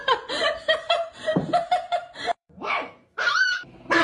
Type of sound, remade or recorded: remade